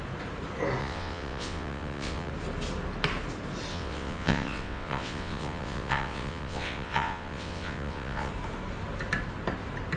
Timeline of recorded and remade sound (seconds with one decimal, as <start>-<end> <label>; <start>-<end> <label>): 0.0-0.8 recorded; 0.8-2.3 remade; 2.3-3.7 recorded; 3.7-8.3 remade; 8.3-10.0 recorded